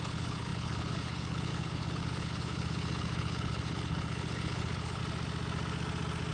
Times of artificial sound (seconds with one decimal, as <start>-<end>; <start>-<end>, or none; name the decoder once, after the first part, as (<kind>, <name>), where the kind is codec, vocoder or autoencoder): 0.0-5.0 (codec, HILCodec)